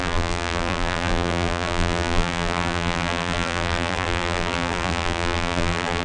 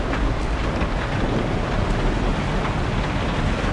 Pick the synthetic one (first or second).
first